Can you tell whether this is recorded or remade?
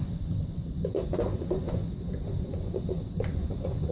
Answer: remade